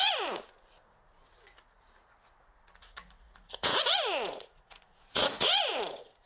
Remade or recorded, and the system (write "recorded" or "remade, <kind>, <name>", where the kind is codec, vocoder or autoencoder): remade, vocoder, Vocos